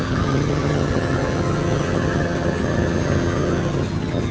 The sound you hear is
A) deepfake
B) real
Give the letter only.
A